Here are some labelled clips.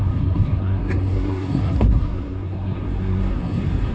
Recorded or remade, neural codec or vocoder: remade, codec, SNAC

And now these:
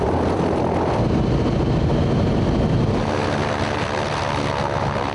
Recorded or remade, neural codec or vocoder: recorded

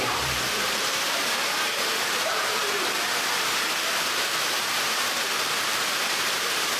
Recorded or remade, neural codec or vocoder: remade, vocoder, BigVGAN v2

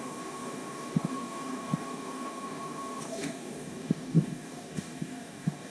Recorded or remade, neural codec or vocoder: remade, codec, DAC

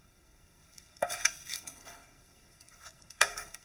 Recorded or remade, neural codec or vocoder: remade, codec, SNAC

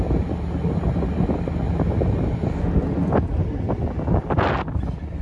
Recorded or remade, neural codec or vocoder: recorded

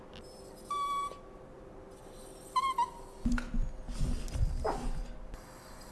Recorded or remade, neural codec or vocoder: recorded